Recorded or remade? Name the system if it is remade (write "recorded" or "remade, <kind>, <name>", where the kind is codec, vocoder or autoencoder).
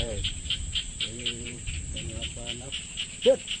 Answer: remade, vocoder, BigVGAN v2